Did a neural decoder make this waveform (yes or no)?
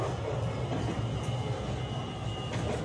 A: no